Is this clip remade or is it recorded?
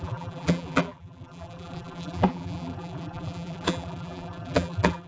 remade